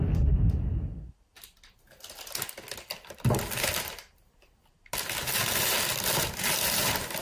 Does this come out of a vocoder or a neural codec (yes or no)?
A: no